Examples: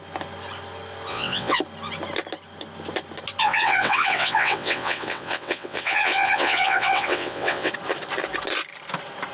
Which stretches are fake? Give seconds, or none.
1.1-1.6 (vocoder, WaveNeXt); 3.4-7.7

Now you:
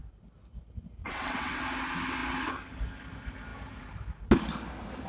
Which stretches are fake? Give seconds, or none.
1.0-1.6 (vocoder, WaveNeXt)

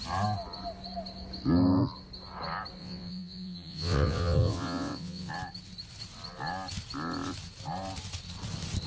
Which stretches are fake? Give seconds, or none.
2.8-5.3 (vocoder, WaveNeXt)

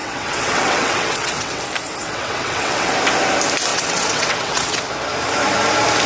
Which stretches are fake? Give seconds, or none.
0.0-1.6 (vocoder, WaveNeXt); 2.0-2.9; 3.7-4.8

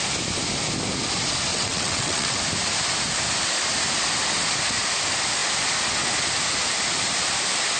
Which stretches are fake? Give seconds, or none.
1.5-2.4 (vocoder, WaveNeXt)

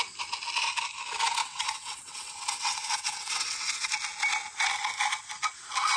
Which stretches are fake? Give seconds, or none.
1.4-3.9 (vocoder, WaveNeXt)